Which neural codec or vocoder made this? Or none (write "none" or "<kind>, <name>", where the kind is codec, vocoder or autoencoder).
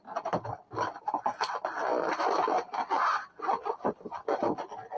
none